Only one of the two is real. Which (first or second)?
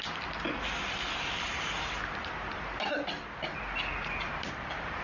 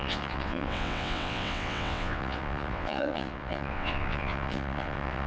first